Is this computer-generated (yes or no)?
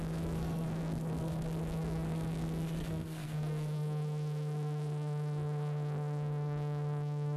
yes